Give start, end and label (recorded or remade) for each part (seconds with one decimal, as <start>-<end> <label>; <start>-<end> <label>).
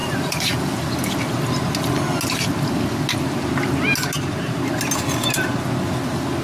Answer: 0.0-0.9 remade; 0.9-6.4 recorded